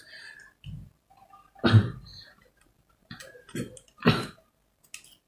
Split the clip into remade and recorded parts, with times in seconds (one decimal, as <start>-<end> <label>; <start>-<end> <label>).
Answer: 0.0-2.1 recorded; 2.1-4.8 remade; 4.8-5.3 recorded